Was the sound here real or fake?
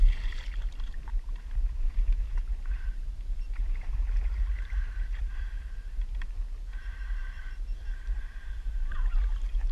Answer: fake